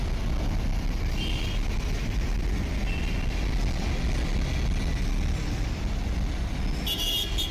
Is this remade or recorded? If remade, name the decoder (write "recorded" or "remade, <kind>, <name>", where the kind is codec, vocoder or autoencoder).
recorded